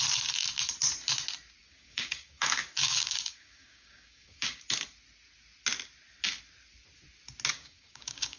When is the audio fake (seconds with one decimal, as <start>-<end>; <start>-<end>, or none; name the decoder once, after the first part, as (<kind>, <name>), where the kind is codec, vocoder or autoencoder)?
1.6-4.6 (codec, DAC); 7.5-8.4